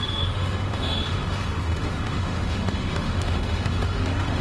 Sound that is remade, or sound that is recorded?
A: remade